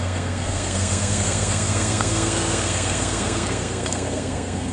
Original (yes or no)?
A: no